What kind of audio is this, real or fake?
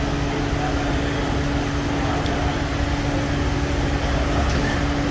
real